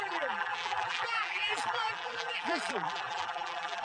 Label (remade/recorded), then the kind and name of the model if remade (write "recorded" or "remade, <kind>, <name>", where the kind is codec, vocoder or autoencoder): remade, vocoder, BigVGAN v2